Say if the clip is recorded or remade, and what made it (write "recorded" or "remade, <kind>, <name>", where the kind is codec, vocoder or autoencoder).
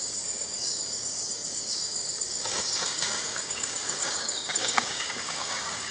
remade, codec, DAC